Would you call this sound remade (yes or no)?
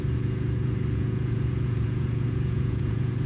yes